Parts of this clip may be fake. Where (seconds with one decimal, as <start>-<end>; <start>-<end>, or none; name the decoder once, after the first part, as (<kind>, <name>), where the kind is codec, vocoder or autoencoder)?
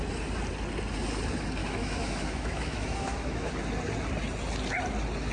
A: 1.6-3.5 (autoencoder, DAC-VAE)